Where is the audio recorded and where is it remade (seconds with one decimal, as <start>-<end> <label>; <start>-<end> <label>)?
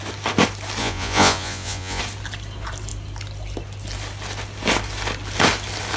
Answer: 0.0-0.8 recorded; 0.8-2.0 remade; 2.0-6.0 recorded